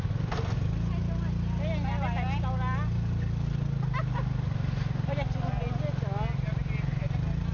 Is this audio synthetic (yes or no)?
no